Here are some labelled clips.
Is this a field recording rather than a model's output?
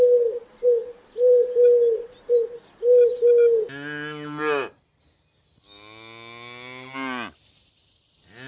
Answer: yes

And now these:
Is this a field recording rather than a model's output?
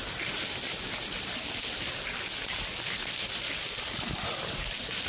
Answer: yes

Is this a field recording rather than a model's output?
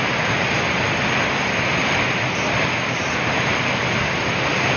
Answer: yes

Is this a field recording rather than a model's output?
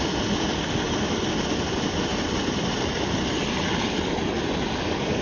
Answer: yes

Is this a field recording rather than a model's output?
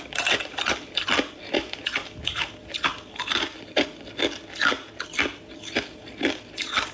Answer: yes